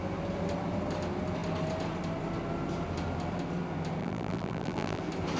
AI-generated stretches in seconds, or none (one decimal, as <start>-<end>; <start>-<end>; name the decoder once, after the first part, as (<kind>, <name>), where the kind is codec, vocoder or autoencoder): 4.0-5.0 (vocoder, BigVGAN v2)